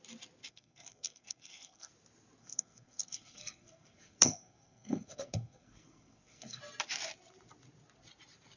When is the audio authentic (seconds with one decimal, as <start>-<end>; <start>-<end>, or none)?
0.0-0.5; 1.9-2.4; 6.6-8.6